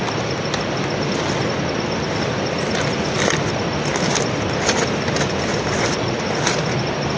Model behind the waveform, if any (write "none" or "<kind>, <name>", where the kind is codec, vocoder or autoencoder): none